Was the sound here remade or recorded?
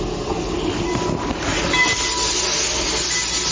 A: recorded